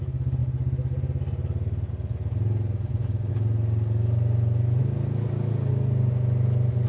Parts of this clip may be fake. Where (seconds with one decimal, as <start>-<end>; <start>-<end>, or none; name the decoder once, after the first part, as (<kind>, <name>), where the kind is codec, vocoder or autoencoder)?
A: none